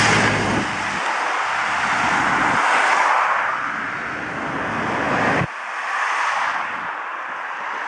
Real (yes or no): yes